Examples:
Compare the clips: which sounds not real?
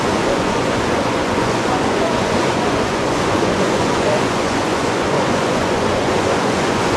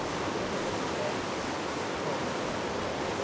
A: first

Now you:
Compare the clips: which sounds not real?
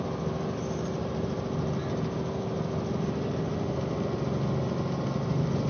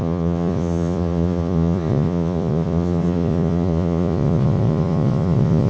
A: second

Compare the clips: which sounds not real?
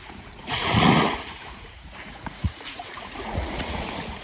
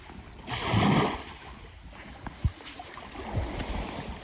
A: first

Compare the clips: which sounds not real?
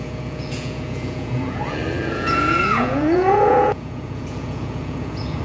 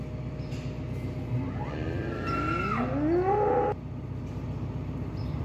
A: first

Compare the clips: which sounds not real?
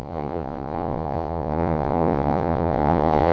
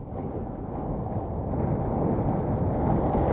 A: first